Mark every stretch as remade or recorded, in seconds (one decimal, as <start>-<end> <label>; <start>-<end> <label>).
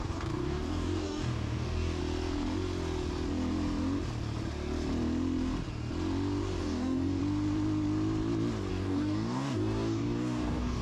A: 0.0-2.0 remade; 2.0-6.6 recorded; 6.6-7.2 remade; 7.2-8.7 recorded; 8.7-10.8 remade